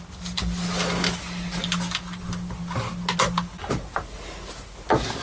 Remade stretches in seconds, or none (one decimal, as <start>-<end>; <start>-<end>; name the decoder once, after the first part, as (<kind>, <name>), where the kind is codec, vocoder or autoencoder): none